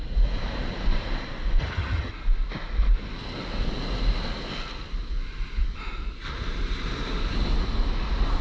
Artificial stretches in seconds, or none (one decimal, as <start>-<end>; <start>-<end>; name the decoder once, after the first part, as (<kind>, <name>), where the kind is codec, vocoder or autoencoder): 1.6-2.1 (vocoder, HiFi-GAN)